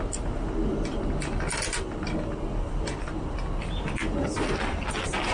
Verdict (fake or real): real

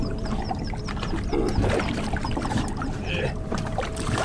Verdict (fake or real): fake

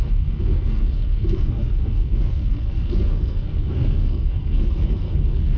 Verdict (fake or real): fake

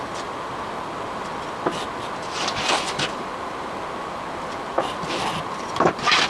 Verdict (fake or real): real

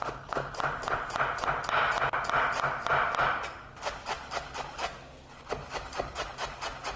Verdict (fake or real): real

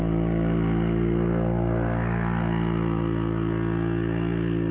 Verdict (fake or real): real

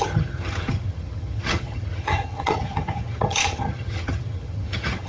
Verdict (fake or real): fake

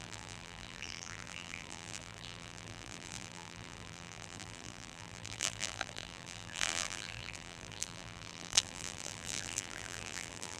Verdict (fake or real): fake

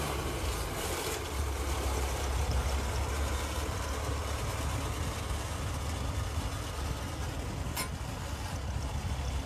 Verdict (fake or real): real